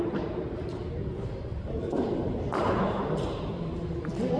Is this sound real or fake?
fake